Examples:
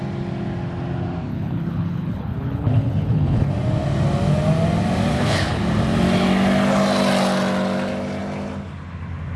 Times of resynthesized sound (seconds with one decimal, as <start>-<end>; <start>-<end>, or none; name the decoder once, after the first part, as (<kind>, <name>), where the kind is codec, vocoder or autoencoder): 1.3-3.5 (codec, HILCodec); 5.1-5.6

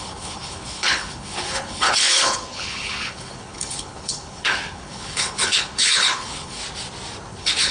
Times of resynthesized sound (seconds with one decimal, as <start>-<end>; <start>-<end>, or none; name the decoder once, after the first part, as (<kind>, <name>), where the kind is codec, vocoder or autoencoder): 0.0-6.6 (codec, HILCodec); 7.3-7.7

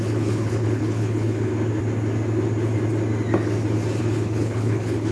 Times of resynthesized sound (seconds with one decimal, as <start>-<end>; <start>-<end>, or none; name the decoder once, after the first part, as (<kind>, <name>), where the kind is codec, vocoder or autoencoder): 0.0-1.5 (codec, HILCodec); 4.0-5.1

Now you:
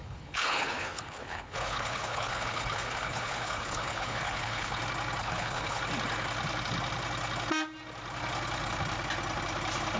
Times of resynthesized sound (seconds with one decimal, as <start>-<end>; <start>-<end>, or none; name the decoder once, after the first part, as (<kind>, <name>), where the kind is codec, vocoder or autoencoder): 0.0-4.8 (codec, HILCodec); 5.2-5.8